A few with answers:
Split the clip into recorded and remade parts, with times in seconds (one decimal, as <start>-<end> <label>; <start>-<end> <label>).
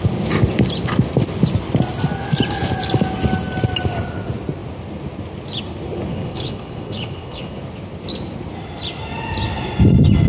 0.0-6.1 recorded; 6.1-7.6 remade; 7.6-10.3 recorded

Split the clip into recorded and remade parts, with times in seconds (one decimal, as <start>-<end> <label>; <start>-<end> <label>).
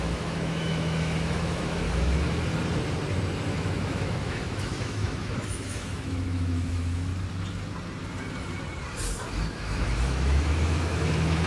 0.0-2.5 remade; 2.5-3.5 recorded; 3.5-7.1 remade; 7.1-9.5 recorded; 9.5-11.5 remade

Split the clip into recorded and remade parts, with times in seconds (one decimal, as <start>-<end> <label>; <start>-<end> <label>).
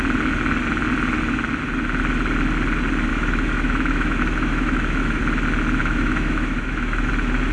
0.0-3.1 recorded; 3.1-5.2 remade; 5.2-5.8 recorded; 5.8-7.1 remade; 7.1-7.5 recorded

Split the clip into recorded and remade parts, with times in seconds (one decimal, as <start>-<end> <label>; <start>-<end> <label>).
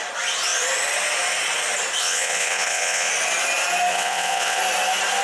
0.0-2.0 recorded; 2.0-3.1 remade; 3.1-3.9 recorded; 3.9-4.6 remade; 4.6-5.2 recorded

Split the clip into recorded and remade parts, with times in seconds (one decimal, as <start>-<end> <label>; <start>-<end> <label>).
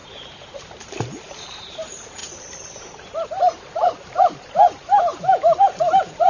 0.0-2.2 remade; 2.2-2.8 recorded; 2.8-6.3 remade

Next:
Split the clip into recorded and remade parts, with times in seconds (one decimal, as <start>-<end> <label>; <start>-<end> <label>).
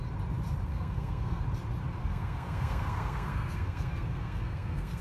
0.0-0.7 recorded; 0.7-1.4 remade; 1.4-2.0 recorded; 2.0-5.0 remade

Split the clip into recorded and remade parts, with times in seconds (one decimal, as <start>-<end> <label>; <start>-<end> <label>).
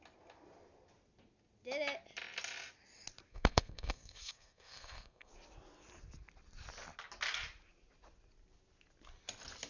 0.0-3.3 recorded; 3.3-5.3 remade; 5.3-9.7 recorded